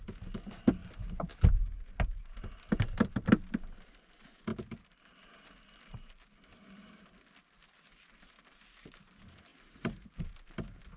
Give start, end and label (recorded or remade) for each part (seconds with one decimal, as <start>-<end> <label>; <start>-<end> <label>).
0.0-4.5 recorded; 4.5-5.0 remade; 5.0-9.5 recorded; 9.5-10.3 remade; 10.3-11.0 recorded